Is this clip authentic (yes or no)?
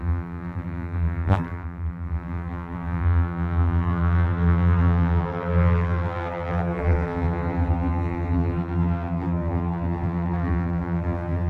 no